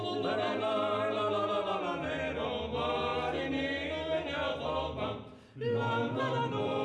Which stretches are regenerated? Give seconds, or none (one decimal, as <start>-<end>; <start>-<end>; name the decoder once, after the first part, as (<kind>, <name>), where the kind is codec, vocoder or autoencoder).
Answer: none